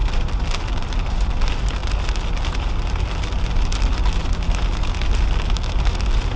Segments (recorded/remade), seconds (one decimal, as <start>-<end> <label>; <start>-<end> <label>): 0.0-6.4 recorded